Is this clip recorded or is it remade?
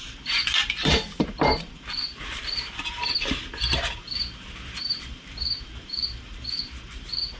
remade